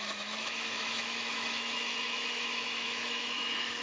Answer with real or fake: fake